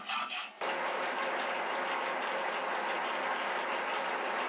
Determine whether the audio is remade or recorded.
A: recorded